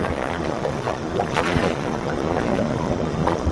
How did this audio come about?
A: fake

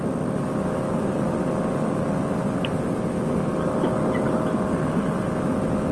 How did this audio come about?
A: real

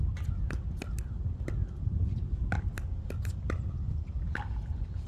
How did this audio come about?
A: real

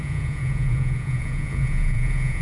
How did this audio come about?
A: fake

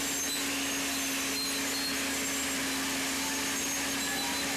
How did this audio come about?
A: real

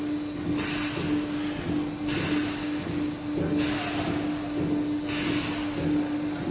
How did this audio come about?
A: real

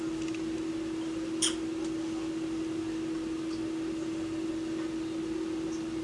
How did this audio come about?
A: real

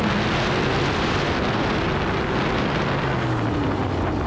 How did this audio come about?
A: real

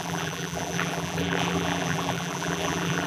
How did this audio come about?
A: fake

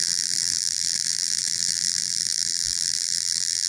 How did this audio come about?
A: fake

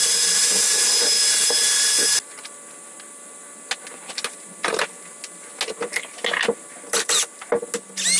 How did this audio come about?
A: real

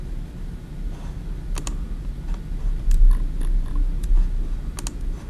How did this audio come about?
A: real